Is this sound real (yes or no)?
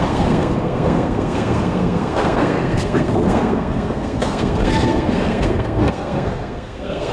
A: no